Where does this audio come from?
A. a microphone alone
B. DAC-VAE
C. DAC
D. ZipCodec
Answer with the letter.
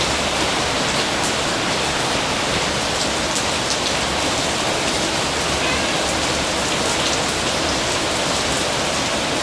A